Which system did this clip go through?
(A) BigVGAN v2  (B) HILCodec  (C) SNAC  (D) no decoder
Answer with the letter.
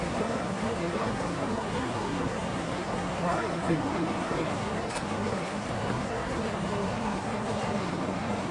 C